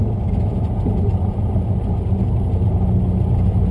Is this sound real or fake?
real